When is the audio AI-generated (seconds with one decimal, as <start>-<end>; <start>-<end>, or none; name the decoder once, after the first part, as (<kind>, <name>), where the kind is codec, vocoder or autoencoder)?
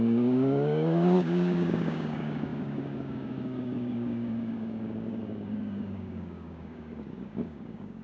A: 0.0-8.0 (codec, DAC)